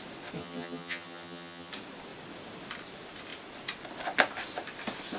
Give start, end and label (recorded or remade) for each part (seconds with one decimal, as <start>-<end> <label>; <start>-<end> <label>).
0.0-0.4 recorded; 0.4-1.7 remade; 1.7-5.2 recorded